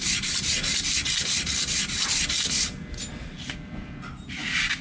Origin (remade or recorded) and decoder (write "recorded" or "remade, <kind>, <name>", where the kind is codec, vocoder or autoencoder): recorded